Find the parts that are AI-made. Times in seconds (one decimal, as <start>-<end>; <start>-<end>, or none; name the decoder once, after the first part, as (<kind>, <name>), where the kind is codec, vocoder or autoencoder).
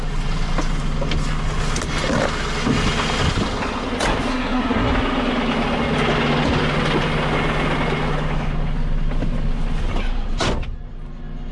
4.3-4.9 (codec, SNAC)